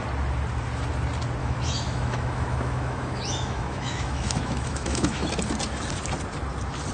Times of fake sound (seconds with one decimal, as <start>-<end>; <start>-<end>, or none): 1.4-5.3